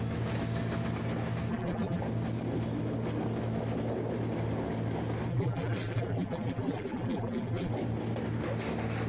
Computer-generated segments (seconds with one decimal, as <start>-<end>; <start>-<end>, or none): 1.5-2.0; 5.3-7.7